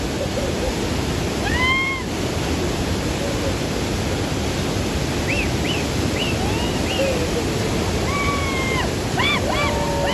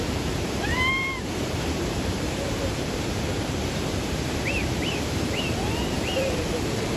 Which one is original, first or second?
first